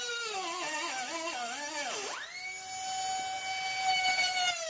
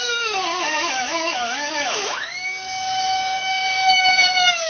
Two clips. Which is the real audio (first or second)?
first